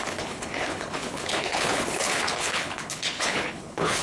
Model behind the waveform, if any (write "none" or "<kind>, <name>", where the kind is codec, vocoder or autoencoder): codec, HILCodec